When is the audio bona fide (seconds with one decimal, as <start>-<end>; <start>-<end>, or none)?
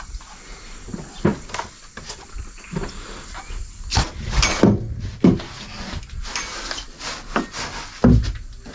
0.0-8.7